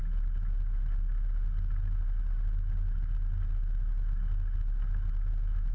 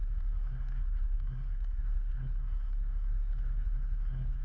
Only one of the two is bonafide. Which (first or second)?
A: first